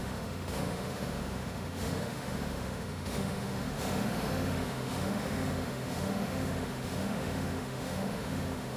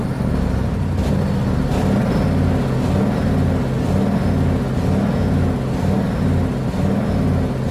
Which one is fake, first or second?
first